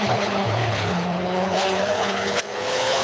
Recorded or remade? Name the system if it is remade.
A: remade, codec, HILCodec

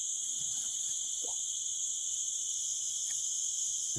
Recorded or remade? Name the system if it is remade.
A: remade, vocoder, Vocos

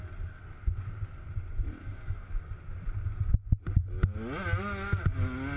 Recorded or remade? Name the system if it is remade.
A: recorded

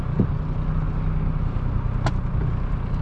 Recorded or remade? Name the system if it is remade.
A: recorded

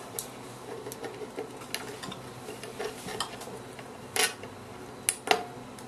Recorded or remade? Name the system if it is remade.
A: recorded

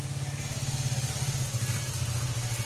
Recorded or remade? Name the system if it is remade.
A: recorded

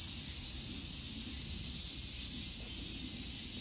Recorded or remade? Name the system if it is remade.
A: recorded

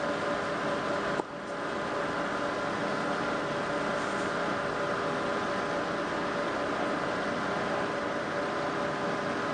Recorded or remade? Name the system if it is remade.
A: recorded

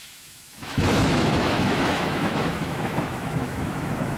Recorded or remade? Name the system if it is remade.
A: remade, autoencoder, DAC-VAE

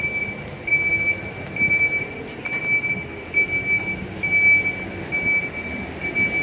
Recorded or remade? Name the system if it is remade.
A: recorded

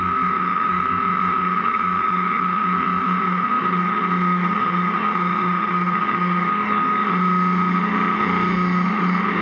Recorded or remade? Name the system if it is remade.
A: remade, autoencoder, DAC-VAE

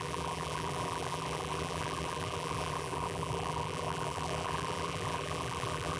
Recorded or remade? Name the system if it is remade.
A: remade, vocoder, BigVGAN v2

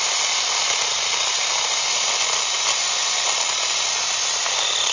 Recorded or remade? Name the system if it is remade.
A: recorded